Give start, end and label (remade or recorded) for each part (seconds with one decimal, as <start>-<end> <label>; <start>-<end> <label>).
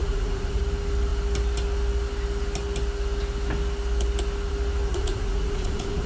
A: 0.0-0.6 remade; 0.6-4.9 recorded; 4.9-6.1 remade